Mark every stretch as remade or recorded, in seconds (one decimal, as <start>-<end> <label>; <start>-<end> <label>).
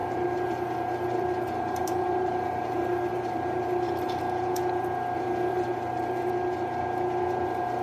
0.0-4.2 remade; 4.2-5.5 recorded; 5.5-6.3 remade; 6.3-7.8 recorded